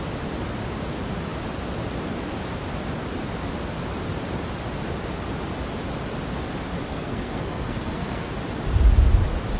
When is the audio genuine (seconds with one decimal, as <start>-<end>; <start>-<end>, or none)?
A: 0.0-6.9; 8.3-9.6